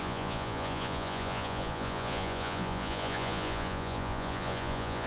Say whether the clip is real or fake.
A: fake